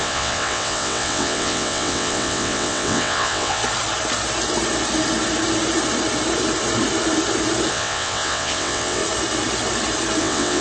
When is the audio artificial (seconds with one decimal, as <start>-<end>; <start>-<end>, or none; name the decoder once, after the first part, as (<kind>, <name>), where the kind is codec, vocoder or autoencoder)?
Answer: 0.0-3.6 (vocoder, WaveNeXt); 7.7-9.0; 10.2-10.6